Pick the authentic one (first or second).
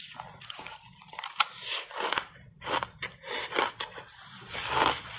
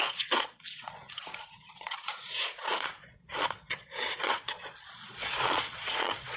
first